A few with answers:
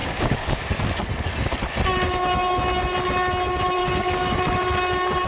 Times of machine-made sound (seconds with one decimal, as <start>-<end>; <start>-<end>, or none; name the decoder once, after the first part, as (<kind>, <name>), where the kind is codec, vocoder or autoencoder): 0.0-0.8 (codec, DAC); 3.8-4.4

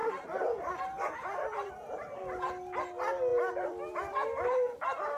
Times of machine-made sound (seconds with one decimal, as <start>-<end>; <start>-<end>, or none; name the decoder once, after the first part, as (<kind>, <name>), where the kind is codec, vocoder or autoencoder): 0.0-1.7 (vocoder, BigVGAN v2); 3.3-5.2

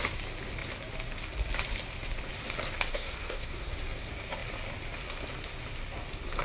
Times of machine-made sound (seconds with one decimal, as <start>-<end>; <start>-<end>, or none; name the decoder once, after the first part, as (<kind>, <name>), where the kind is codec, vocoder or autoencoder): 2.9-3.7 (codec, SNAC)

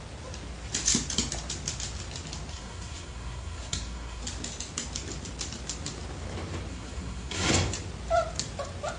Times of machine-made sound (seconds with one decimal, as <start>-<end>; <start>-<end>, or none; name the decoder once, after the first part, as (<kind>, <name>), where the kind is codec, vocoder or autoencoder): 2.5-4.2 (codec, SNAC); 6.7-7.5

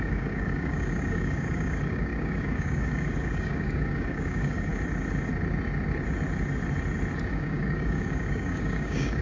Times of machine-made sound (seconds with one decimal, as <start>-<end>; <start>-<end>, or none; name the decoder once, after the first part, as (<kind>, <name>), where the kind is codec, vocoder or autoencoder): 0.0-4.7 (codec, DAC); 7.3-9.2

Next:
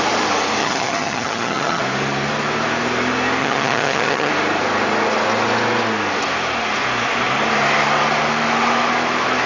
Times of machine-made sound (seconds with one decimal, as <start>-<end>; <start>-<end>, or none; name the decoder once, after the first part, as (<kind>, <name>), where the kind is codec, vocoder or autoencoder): 0.6-1.8 (vocoder, HiFi-GAN); 3.4-4.3

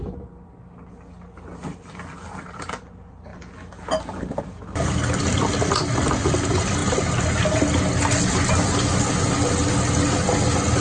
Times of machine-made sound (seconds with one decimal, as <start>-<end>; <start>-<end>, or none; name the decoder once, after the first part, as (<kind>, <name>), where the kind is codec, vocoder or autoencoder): none

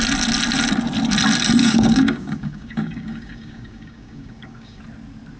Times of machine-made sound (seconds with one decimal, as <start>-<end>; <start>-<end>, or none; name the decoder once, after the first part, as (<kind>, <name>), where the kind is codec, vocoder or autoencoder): 1.6-4.8 (codec, DAC)